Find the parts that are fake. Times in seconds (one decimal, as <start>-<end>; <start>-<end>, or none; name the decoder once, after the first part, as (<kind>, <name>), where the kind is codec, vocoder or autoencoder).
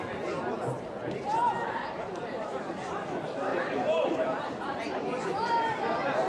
0.0-1.3 (vocoder, BigVGAN v2); 2.1-6.3